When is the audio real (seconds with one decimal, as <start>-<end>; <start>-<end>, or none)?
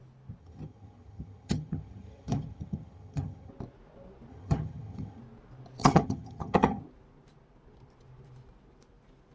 0.0-0.4; 3.5-4.3; 5.2-5.8; 6.8-9.3